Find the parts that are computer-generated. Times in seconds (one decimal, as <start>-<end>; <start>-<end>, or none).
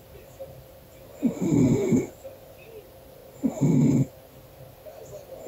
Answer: 0.0-1.1; 2.1-3.2; 4.1-5.5